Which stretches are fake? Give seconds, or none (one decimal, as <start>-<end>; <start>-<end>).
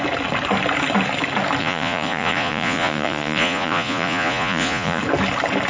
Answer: 1.6-5.0